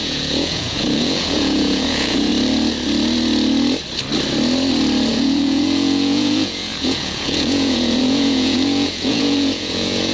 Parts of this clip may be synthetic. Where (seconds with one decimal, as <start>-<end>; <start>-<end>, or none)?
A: 0.0-2.3; 5.1-10.1